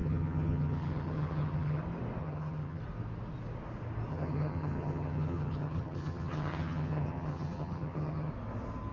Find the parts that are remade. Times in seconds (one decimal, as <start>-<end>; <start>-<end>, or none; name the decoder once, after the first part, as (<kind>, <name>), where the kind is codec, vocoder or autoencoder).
0.0-1.8 (vocoder, HiFi-GAN); 2.2-2.8; 4.1-8.3